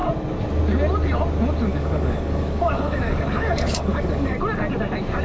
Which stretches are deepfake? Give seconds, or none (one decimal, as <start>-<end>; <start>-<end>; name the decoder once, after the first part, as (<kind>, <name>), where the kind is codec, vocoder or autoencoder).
1.7-4.4 (codec, DAC)

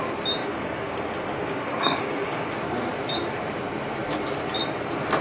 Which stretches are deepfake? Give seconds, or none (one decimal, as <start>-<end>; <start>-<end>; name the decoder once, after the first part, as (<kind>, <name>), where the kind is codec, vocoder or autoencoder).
0.4-2.5 (codec, DAC)

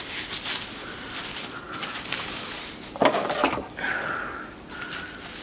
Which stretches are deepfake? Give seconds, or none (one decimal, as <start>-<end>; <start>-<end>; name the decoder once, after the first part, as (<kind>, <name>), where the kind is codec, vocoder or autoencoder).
1.3-2.5 (codec, DAC); 3.0-4.4

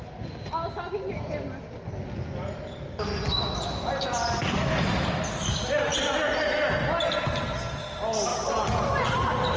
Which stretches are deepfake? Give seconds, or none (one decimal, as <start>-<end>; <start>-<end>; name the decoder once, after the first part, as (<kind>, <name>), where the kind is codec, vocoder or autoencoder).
none

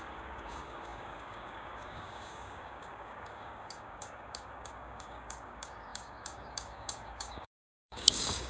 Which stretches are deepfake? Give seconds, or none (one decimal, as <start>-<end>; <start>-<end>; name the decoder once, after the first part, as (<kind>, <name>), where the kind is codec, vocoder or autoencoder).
0.0-8.5 (codec, DAC)

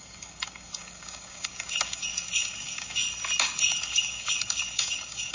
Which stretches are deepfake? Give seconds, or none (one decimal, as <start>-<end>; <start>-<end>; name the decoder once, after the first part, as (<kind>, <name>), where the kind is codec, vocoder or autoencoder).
0.0-3.0 (codec, DAC); 3.6-5.3

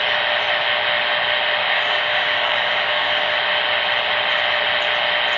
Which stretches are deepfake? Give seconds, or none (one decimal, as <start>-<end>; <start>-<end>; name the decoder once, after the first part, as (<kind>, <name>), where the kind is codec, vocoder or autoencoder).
1.6-3.3 (codec, DAC)

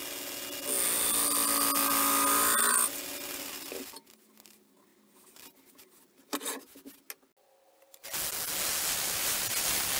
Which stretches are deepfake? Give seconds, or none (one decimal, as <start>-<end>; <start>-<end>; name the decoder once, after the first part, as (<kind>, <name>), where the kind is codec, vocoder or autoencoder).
none